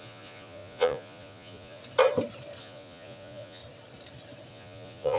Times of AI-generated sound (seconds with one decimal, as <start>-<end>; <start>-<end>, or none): 0.0-1.8; 2.6-3.6; 4.5-5.2